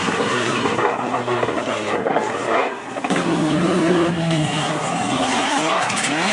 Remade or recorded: remade